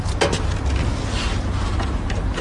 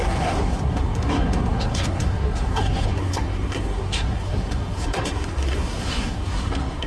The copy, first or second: second